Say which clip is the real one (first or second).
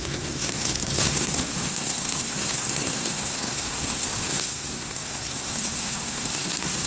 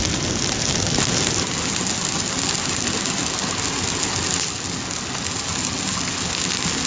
second